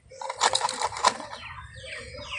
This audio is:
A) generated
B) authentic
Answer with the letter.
B